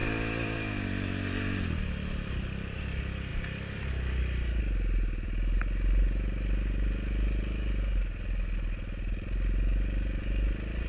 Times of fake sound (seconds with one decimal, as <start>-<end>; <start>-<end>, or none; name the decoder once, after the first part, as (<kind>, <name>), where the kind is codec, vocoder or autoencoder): none